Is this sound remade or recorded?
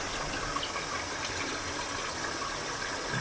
recorded